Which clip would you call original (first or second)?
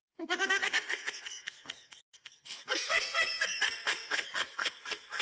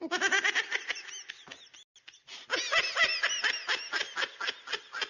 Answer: second